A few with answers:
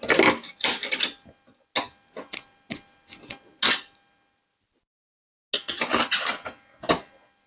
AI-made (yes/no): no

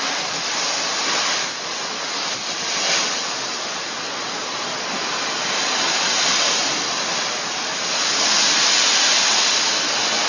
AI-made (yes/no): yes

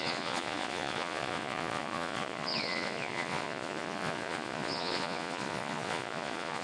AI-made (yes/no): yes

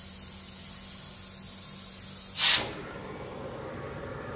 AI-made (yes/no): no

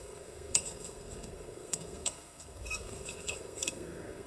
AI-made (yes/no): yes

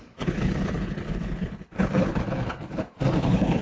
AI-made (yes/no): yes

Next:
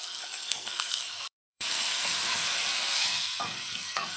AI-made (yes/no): yes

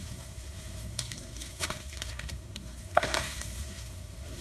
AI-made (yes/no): yes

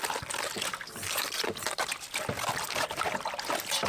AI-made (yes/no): no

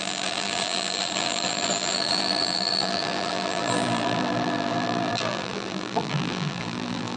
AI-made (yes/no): yes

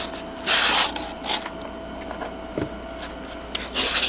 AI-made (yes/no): no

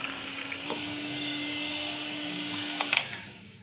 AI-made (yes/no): yes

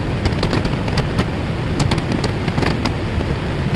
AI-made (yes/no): no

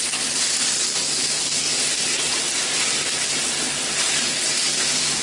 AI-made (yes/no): no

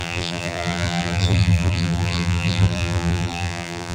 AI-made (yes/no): yes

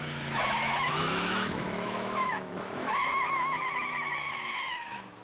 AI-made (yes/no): yes